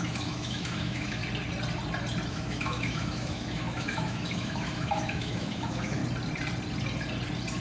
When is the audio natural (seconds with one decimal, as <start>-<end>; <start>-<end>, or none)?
1.2-2.3; 6.0-7.6